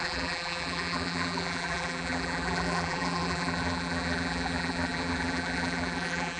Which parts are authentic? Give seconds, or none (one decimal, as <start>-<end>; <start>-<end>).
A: none